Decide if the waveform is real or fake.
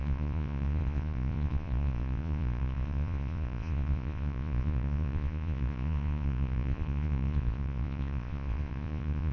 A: fake